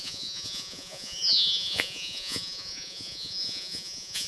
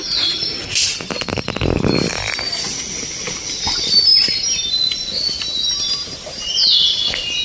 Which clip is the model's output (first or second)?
first